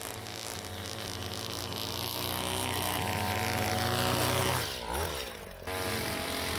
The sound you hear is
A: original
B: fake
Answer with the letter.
A